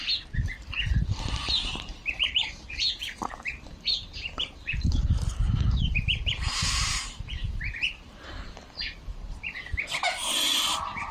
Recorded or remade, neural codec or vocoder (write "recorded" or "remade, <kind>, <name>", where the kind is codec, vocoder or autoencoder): remade, vocoder, BigVGAN v2